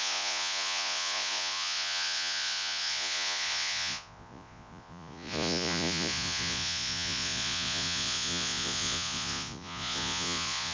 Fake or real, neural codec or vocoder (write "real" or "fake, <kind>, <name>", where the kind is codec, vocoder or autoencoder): fake, vocoder, Vocos